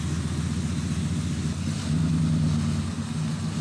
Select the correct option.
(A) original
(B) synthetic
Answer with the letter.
A